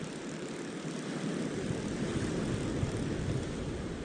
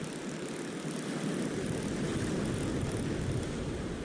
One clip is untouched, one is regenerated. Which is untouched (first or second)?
second